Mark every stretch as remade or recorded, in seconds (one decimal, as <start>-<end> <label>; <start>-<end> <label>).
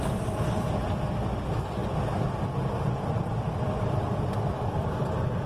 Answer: 0.0-1.8 recorded; 1.8-4.8 remade; 4.8-5.5 recorded